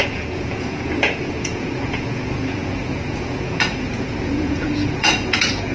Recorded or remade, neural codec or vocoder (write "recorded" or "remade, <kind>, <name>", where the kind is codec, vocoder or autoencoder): remade, vocoder, Vocos